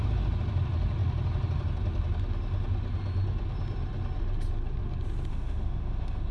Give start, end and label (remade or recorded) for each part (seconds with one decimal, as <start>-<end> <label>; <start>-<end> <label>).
0.0-5.3 recorded; 5.3-6.3 remade